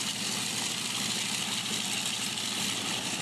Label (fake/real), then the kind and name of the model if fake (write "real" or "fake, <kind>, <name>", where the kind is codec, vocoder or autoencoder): real